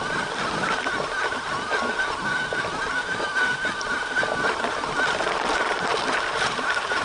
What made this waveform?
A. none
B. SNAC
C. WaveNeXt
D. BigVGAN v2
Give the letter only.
A